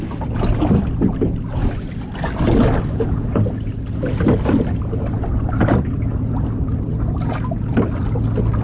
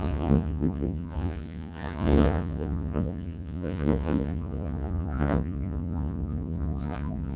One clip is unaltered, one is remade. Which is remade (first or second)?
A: second